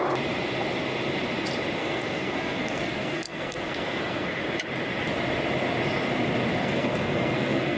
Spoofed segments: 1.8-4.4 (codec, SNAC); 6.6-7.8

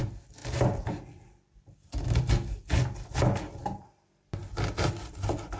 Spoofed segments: none

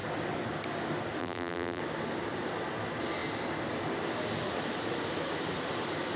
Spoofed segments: 1.2-1.8 (vocoder, BigVGAN v2)

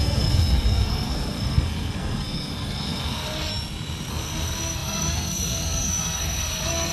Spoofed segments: 0.0-3.5 (codec, SNAC); 4.1-6.9

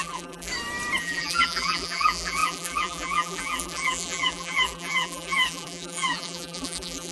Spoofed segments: 0.0-0.5 (vocoder, BigVGAN v2); 1.0-7.1

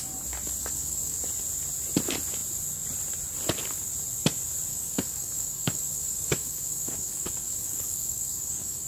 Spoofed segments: 0.6-1.2 (codec, DAC); 4.7-8.9

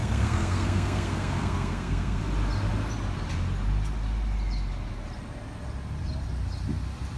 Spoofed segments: 0.0-2.2 (codec, SNAC)

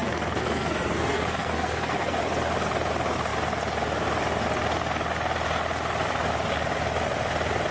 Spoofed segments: 0.0-2.2 (codec, SNAC)